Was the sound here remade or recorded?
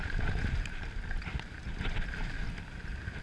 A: remade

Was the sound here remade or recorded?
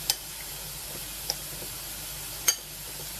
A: recorded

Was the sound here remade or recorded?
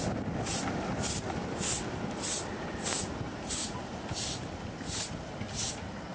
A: recorded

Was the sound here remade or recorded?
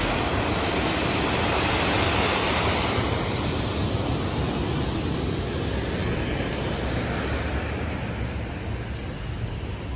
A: recorded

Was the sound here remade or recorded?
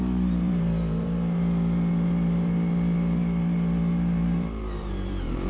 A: remade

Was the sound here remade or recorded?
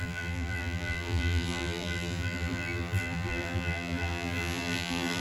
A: remade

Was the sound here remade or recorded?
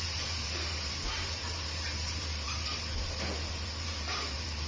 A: remade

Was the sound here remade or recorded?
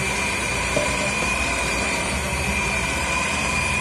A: remade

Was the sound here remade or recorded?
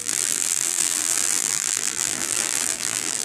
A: remade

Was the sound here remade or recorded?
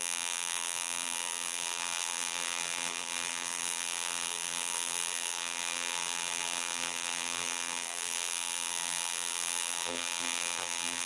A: remade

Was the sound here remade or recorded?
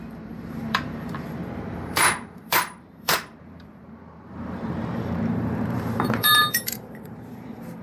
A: remade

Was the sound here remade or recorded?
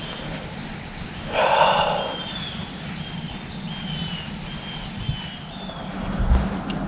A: recorded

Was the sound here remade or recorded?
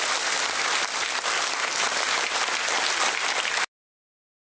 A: recorded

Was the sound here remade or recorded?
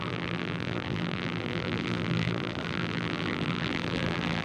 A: remade